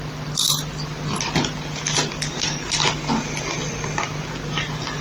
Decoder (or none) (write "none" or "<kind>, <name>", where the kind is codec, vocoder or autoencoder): none